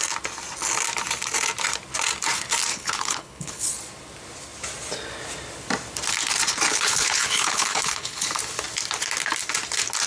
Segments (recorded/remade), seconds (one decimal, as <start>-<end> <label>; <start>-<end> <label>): 0.0-2.7 recorded; 2.7-3.7 remade; 3.7-6.7 recorded; 6.7-8.3 remade; 8.3-10.1 recorded